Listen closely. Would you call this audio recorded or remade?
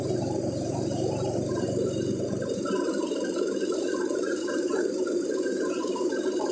remade